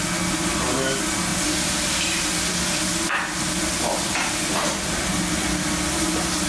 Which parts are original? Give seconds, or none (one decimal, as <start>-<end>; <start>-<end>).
0.0-6.5